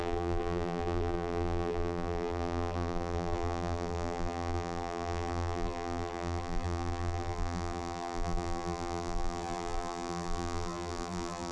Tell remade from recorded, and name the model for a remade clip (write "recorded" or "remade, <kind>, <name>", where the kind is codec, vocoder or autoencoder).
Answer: remade, vocoder, BigVGAN v2